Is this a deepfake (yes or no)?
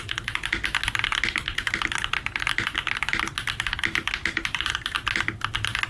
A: no